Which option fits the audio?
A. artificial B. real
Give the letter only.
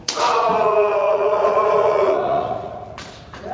A